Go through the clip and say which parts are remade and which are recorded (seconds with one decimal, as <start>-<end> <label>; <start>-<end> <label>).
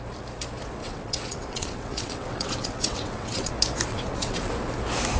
0.0-0.8 recorded; 0.8-3.5 remade; 3.5-3.9 recorded; 3.9-4.5 remade; 4.5-5.2 recorded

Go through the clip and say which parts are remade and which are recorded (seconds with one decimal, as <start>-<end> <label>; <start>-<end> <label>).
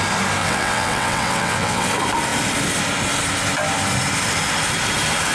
0.0-0.4 recorded; 0.4-1.9 remade; 1.9-5.3 recorded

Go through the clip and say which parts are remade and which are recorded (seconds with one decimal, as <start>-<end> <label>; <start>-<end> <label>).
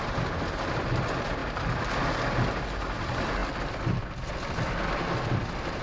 0.0-5.8 recorded